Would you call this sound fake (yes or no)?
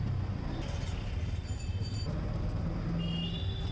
no